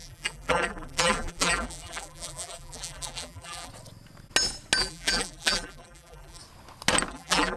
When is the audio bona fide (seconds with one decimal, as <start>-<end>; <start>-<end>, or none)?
3.7-4.8; 6.4-7.1